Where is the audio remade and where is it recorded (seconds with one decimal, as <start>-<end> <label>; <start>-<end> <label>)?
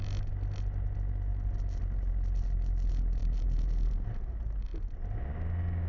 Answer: 0.0-3.2 recorded; 3.2-4.1 remade; 4.1-5.9 recorded